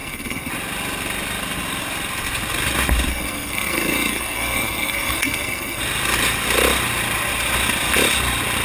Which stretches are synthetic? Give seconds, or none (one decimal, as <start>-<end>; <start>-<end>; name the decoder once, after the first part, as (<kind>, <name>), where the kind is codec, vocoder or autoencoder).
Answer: 0.0-0.5 (codec, SNAC); 3.1-5.8